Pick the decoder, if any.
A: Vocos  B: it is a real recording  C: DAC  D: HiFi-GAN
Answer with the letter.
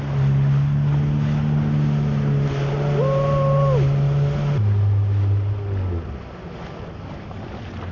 B